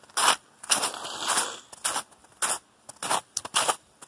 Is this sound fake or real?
real